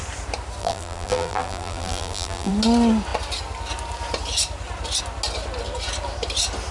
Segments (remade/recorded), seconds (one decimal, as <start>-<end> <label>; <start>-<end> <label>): 0.0-0.6 recorded; 0.6-2.5 remade; 2.5-6.7 recorded